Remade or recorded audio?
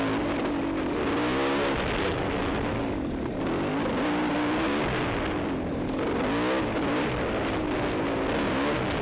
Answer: recorded